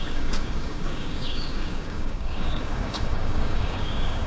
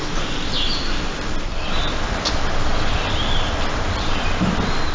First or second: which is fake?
first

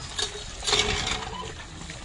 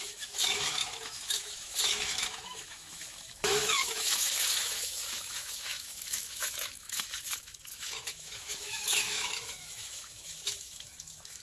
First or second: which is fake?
second